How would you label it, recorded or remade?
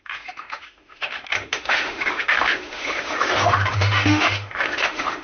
remade